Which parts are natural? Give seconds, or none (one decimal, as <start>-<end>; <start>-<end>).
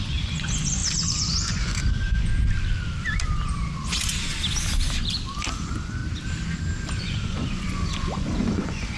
2.3-5.5; 6.0-7.0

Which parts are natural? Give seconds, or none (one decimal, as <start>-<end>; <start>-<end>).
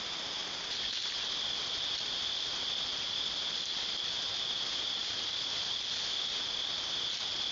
0.0-7.5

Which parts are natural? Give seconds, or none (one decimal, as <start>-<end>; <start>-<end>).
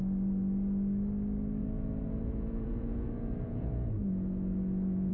0.0-1.6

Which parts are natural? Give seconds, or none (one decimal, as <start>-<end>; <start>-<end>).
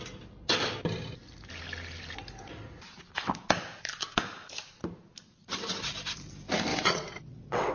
0.0-6.7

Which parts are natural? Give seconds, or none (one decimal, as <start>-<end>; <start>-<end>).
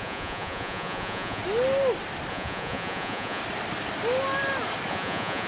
1.4-2.3; 3.4-4.9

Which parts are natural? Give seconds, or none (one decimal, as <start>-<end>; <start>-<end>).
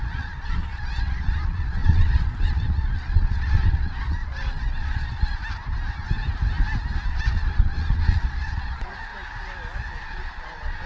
5.4-7.1; 9.1-10.0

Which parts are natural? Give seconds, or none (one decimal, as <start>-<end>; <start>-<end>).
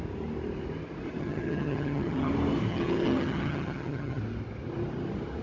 0.0-1.2; 2.3-2.7; 4.2-5.4